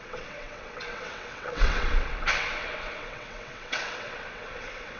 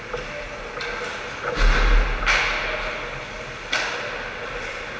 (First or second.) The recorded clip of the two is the second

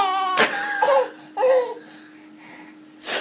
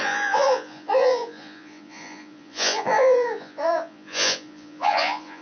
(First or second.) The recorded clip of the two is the first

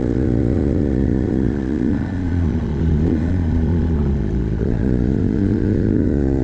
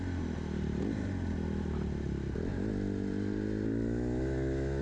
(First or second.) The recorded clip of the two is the second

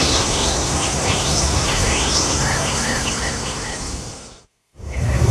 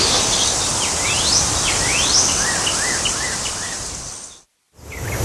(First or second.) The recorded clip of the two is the second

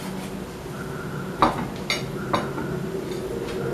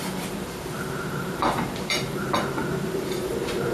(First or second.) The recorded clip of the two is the first